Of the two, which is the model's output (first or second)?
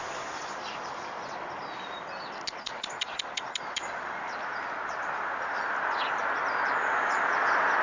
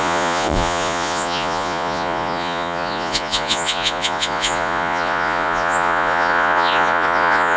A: second